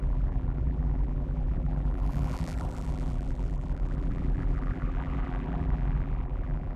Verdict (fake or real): fake